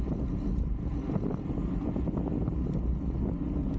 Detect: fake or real real